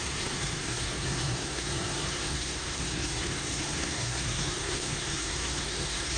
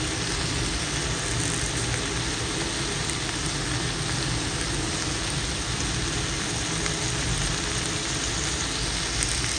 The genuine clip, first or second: second